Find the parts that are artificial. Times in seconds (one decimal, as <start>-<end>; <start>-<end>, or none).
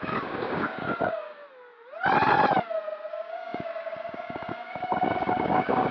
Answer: 0.0-1.4; 3.1-5.9